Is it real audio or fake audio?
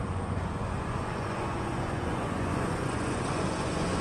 fake